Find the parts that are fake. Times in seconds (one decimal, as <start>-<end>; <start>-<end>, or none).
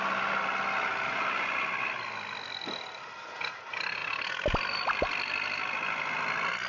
none